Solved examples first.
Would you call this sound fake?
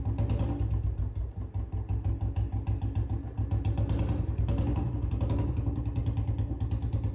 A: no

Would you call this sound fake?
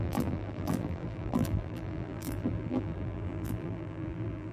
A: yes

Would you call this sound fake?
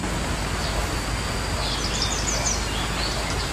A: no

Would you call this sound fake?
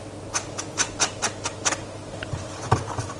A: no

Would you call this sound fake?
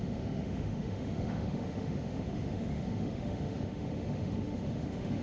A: yes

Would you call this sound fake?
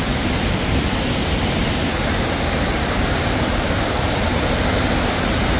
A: no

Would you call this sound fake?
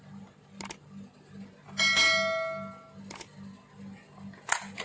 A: no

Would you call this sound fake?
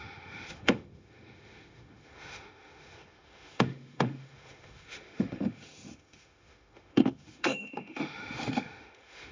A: yes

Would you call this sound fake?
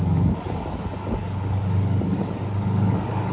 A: yes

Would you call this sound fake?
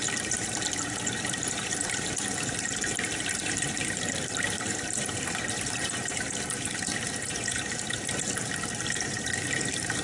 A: yes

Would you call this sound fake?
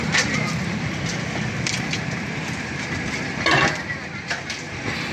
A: yes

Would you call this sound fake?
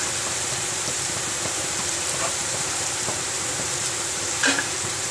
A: yes